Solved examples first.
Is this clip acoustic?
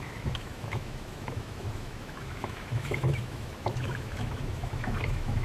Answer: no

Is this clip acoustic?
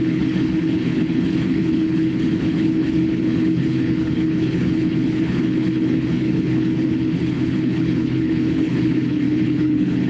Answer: no